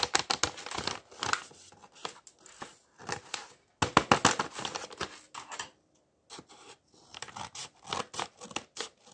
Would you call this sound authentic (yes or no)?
yes